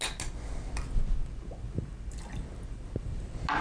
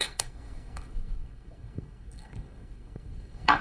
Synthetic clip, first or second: second